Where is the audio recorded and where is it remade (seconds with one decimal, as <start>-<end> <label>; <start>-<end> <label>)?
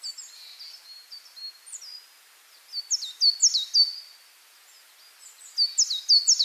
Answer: 0.0-0.5 recorded; 0.5-1.8 remade; 1.8-6.4 recorded